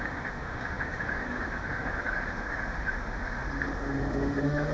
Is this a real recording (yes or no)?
no